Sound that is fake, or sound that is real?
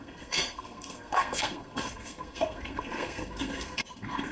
fake